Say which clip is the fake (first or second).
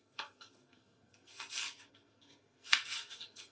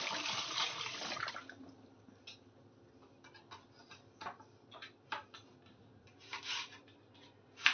first